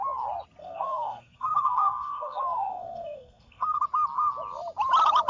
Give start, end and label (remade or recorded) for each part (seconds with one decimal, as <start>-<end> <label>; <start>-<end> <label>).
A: 0.0-0.6 recorded; 0.6-3.8 remade; 3.8-5.3 recorded